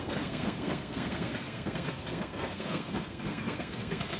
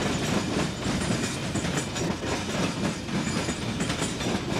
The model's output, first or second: first